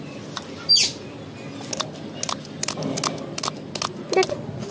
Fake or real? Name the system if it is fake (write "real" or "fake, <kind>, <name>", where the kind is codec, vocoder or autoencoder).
real